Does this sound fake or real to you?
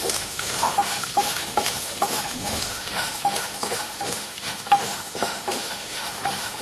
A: fake